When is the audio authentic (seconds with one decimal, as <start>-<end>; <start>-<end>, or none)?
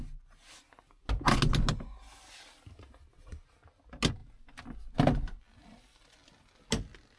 0.0-7.2